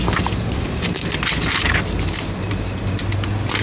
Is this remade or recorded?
recorded